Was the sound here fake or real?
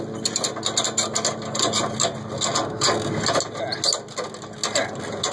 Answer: real